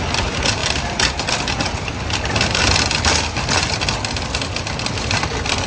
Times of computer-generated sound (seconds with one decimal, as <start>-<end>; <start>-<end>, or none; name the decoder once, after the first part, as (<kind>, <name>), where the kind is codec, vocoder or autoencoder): none